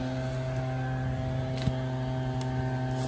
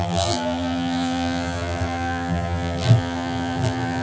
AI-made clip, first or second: second